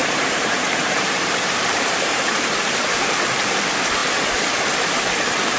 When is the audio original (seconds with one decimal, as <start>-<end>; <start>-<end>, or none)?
3.4-5.6